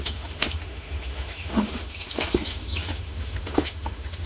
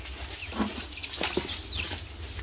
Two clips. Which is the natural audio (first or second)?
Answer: second